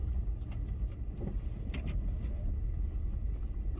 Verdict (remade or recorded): recorded